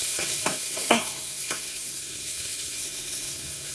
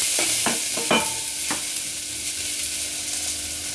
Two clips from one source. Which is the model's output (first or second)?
first